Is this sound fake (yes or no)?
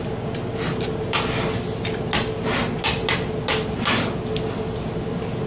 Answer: no